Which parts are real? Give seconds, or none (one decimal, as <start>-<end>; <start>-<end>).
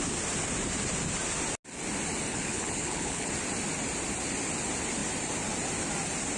0.0-2.3; 3.3-6.4